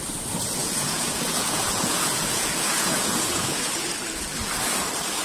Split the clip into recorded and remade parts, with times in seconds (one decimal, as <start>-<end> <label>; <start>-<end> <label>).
0.0-0.6 recorded; 0.6-3.7 remade; 3.7-5.2 recorded